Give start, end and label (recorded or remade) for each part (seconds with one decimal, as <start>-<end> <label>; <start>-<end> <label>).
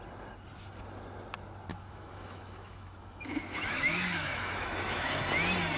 0.0-1.7 recorded; 1.7-5.2 remade; 5.2-5.8 recorded